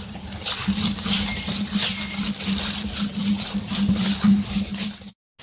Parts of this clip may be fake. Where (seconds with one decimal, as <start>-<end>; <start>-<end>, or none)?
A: none